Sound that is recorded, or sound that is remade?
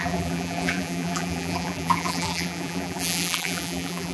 remade